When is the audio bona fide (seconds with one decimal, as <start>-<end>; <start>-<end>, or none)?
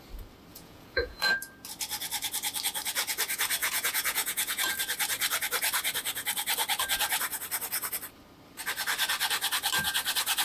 0.0-0.5; 1.3-3.6; 4.7-10.4